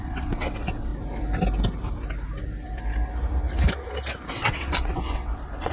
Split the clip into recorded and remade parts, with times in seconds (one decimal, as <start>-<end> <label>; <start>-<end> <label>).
0.0-0.9 remade; 0.9-4.3 recorded; 4.3-5.7 remade